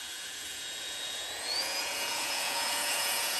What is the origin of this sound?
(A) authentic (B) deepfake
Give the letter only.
B